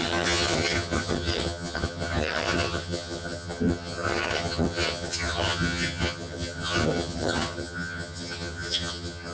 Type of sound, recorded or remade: remade